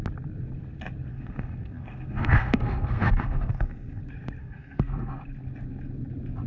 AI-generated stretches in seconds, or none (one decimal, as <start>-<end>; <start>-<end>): 1.1-4.0; 4.4-5.2